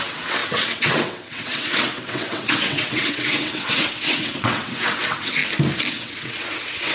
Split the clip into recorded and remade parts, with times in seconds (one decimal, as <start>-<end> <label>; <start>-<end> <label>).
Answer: 0.0-5.4 remade; 5.4-5.9 recorded; 5.9-6.9 remade